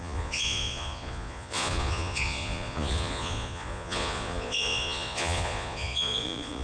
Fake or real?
fake